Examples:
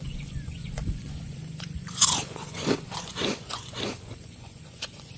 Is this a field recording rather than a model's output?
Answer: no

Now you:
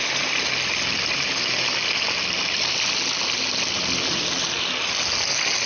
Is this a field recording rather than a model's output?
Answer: yes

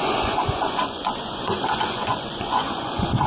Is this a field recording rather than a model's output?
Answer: no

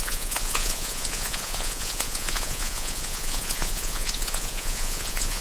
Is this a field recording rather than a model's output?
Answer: no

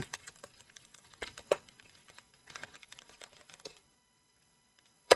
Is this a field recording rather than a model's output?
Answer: no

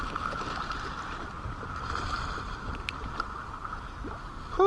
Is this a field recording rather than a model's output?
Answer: yes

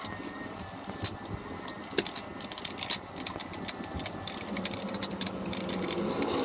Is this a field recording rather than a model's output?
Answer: yes